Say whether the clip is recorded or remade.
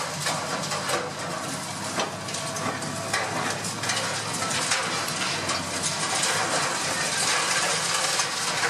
recorded